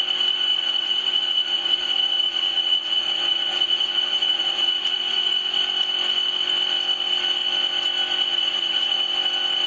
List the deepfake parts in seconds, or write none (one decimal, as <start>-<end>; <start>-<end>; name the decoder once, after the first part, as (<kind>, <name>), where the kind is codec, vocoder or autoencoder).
0.5-5.3 (vocoder, Vocos); 8.3-8.9

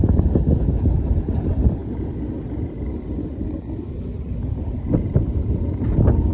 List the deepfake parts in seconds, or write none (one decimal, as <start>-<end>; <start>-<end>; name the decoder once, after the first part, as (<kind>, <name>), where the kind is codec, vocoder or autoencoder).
none

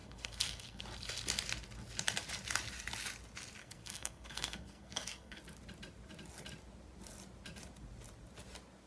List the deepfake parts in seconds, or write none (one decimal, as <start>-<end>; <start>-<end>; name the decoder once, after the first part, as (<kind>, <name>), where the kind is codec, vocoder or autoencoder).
0.0-0.8 (codec, SNAC); 3.6-5.4

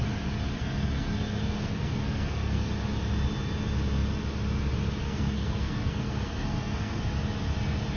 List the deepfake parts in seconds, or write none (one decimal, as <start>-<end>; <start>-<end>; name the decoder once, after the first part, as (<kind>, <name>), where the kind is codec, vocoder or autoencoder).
0.5-2.7 (codec, SNAC); 5.0-7.0

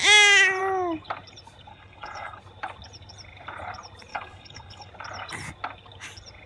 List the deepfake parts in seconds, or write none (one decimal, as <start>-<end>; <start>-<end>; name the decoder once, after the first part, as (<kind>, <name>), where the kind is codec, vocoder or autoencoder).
1.7-2.4 (codec, HILCodec); 4.1-4.9

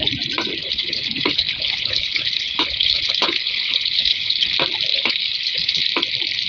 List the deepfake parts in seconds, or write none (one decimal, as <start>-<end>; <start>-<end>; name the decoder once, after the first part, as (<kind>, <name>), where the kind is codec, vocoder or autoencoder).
0.6-4.5 (codec, HILCodec); 4.9-5.8

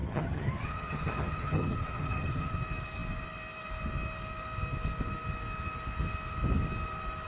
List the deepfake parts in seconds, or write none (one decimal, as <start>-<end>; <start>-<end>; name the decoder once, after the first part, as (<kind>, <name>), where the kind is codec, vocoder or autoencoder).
0.0-2.5 (vocoder, HiFi-GAN)

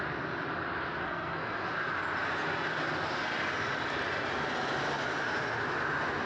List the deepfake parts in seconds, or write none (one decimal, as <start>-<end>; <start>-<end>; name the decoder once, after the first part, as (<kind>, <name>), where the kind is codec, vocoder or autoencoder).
1.0-1.6 (codec, SNAC)